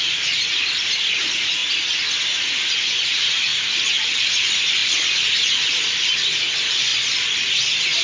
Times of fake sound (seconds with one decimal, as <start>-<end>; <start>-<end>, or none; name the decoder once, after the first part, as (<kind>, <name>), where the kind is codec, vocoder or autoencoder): 0.0-1.6 (vocoder, BigVGAN v2); 2.4-6.9